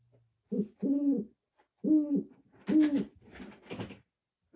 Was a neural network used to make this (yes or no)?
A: no